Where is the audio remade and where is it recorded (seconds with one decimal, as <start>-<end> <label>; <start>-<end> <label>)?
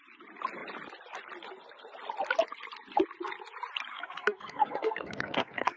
0.0-3.9 recorded; 3.9-5.8 remade